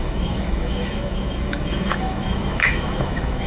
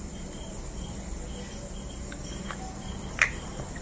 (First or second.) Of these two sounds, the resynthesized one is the first